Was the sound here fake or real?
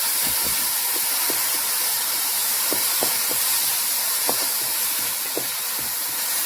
fake